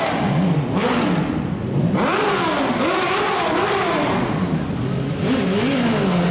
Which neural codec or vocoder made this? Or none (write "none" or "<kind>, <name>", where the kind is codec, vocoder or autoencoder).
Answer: none